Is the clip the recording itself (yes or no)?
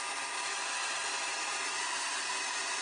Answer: yes